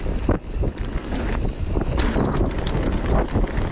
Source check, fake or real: real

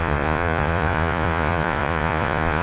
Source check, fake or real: fake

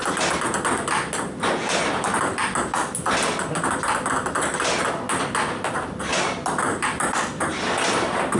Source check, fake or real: real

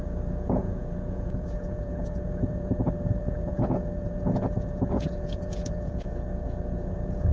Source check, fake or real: fake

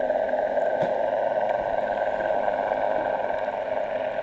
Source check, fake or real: real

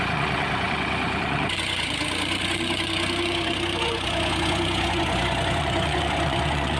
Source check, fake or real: fake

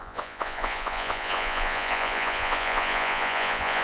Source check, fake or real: fake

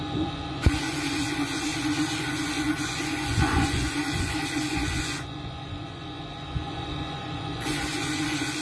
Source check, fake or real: fake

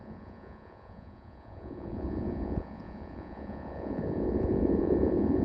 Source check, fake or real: fake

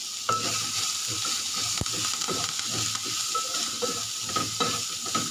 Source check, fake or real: real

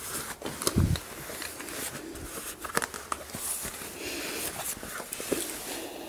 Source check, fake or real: real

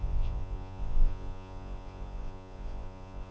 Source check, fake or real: fake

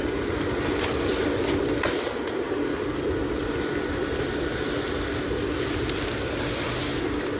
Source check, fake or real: real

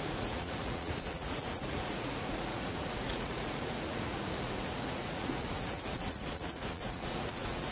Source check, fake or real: fake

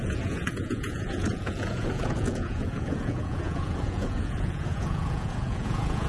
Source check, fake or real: fake